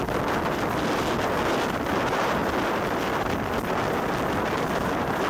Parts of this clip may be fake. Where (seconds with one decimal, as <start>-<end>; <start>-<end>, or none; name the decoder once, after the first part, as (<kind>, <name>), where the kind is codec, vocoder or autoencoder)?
none